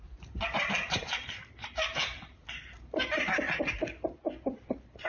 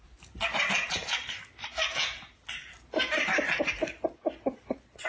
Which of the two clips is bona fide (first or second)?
second